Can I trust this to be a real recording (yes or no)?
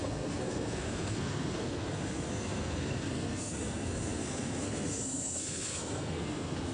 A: no